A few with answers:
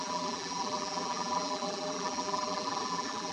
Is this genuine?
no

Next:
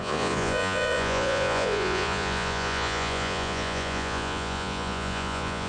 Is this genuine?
no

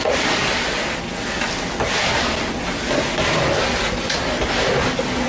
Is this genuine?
yes